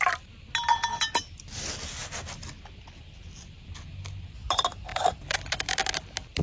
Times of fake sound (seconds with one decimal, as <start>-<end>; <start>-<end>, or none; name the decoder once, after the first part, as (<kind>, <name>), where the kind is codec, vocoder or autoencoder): none